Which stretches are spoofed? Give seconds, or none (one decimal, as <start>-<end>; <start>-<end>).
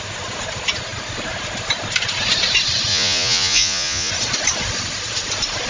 2.9-4.1